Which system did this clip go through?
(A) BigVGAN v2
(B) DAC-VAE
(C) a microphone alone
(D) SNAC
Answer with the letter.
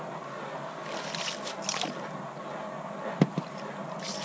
C